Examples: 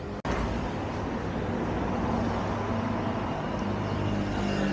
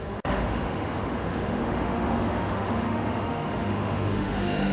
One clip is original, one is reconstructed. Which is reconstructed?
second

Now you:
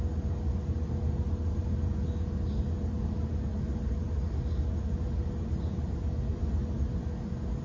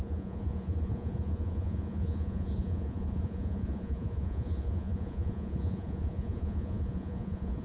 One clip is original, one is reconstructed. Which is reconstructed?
second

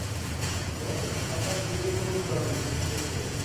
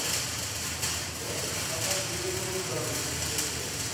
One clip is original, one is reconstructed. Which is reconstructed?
first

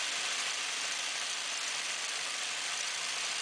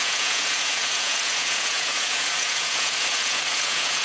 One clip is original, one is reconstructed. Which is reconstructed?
second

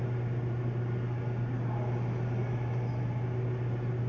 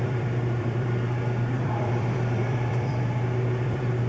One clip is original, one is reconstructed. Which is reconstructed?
second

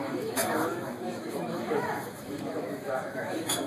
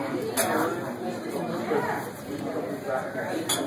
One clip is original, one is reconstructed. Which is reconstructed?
first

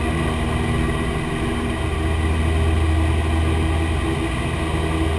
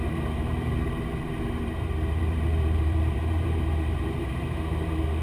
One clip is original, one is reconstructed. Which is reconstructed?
second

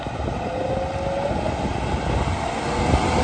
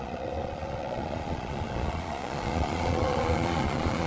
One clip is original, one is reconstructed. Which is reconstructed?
second